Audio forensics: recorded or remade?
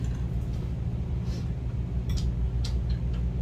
recorded